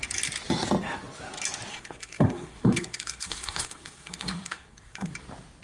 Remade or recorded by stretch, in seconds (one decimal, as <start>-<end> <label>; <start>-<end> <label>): 0.0-1.7 recorded; 1.7-5.1 remade; 5.1-5.6 recorded